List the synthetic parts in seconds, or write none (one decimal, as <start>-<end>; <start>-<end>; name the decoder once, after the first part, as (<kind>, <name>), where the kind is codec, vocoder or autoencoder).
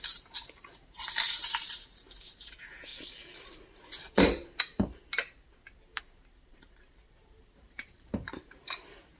0.0-2.9 (vocoder, BigVGAN v2); 6.0-9.2